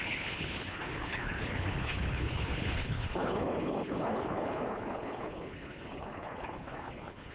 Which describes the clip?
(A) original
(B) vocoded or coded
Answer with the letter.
B